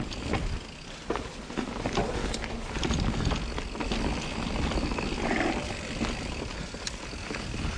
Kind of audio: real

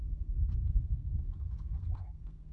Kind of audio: fake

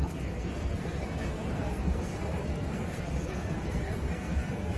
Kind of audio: fake